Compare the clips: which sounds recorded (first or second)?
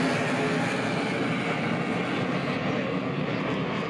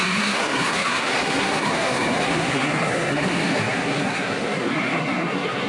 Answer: first